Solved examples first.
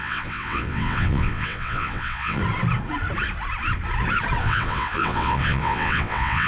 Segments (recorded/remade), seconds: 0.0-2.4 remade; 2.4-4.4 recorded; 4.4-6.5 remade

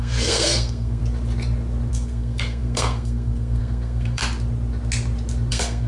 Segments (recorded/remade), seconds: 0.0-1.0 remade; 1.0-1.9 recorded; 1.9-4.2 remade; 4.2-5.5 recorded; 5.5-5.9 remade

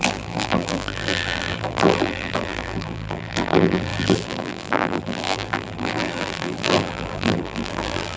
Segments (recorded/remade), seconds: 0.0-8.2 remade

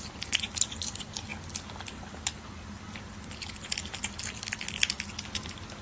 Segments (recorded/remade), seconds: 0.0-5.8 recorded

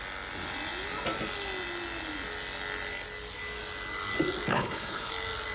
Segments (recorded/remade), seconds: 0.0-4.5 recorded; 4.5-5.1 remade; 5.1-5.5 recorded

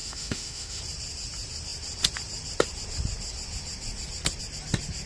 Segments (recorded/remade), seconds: 0.0-0.8 remade; 0.8-5.1 recorded

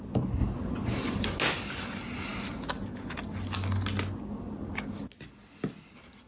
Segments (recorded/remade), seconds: 0.0-6.3 recorded